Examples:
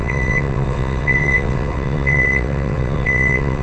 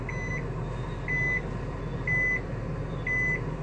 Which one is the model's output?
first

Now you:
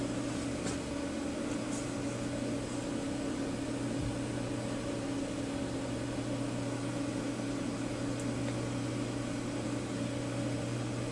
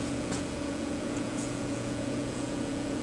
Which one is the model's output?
second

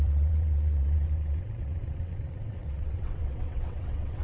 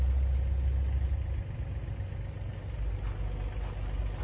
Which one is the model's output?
first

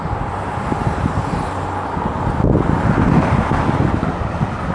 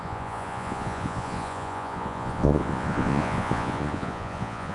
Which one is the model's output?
second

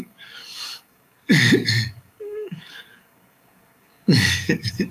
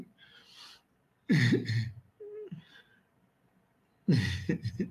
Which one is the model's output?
first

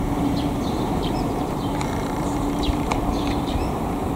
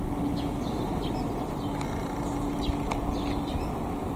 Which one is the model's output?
first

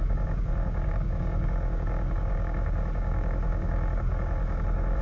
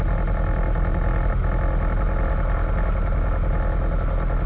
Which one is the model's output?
first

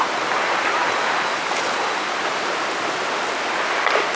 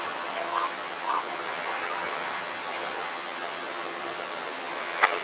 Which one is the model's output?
second